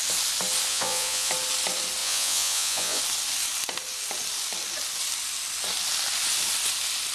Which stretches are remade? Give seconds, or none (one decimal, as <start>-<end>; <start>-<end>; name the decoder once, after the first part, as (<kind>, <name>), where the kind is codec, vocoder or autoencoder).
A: 0.7-1.3 (vocoder, Vocos); 2.0-3.0